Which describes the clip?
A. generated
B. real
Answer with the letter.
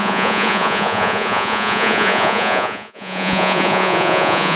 A